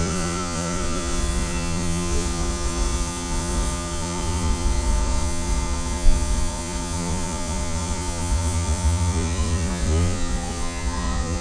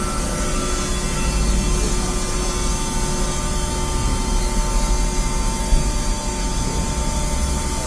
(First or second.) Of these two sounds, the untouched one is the second